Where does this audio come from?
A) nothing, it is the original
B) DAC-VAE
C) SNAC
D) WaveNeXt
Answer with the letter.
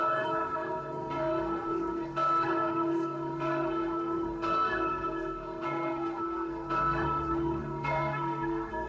C